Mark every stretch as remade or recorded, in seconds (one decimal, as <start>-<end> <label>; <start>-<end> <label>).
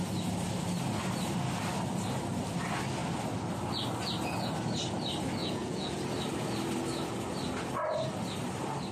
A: 0.0-5.4 recorded; 5.4-6.0 remade; 6.0-8.9 recorded